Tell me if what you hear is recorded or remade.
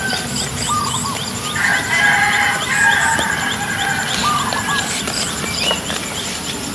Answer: recorded